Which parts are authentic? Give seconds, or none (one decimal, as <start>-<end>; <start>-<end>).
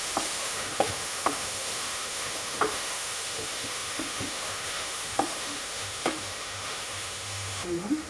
none